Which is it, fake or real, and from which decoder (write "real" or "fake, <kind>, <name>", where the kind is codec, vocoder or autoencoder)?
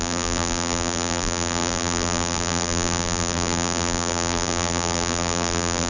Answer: fake, vocoder, BigVGAN v2